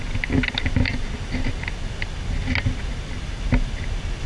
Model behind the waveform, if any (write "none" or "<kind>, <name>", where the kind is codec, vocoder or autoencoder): none